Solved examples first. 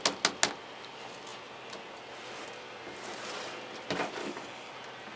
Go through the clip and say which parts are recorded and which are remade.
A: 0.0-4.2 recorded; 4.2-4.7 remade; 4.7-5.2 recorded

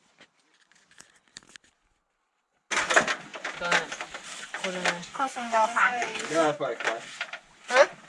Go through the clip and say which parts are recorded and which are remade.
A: 0.0-5.0 recorded; 5.0-6.6 remade; 6.6-8.1 recorded

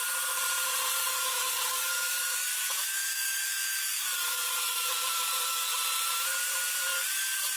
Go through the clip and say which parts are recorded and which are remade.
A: 0.0-1.1 recorded; 1.1-5.7 remade; 5.7-6.9 recorded; 6.9-7.6 remade